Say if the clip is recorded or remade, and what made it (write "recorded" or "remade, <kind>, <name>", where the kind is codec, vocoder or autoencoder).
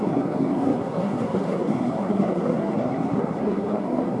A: remade, codec, SNAC